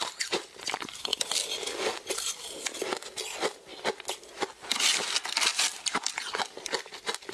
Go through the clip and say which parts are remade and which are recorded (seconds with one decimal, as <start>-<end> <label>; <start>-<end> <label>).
0.0-7.3 recorded